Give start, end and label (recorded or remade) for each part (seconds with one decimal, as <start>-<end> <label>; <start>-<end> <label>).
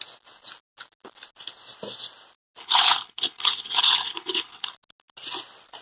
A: 0.0-2.6 recorded; 2.6-4.7 remade; 4.7-5.8 recorded